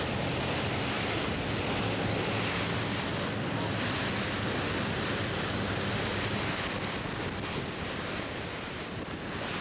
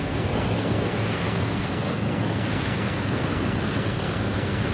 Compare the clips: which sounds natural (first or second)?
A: first